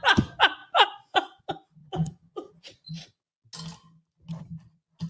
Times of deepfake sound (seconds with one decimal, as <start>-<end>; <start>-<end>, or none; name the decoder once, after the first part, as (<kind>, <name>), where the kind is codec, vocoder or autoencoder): 0.6-1.4 (vocoder, Vocos); 1.8-3.2